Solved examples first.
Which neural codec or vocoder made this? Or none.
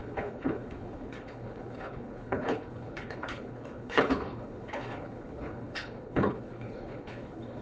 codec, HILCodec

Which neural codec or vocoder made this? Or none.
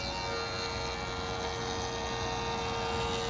none